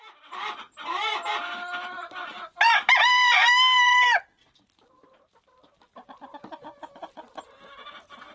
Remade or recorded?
recorded